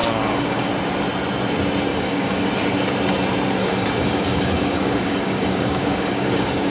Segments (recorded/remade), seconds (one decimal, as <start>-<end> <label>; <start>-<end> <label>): 0.0-0.7 remade; 0.7-1.9 recorded; 1.9-2.5 remade; 2.5-3.6 recorded; 3.6-6.7 remade